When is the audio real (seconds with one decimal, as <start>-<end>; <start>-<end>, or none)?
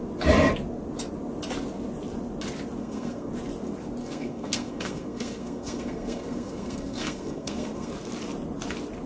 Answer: 0.0-2.8; 3.3-4.0; 7.9-9.1